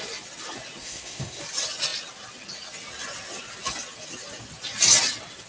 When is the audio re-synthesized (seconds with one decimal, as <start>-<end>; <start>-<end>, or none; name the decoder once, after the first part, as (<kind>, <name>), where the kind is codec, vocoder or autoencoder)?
0.8-1.4 (codec, SNAC)